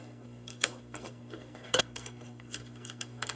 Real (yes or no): no